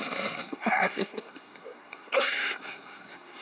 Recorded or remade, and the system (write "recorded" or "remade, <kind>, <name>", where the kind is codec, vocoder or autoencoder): remade, codec, SNAC